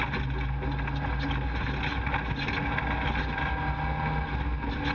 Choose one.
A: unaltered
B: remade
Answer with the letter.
A